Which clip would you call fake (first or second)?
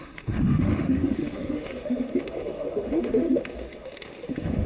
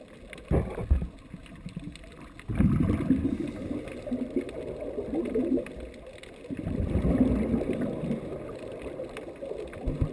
first